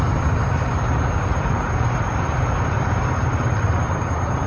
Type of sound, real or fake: fake